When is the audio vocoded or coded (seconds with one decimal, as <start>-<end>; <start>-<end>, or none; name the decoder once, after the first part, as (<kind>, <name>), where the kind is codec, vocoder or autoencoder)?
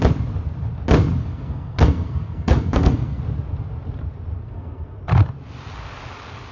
1.2-3.2 (codec, SNAC); 4.4-5.0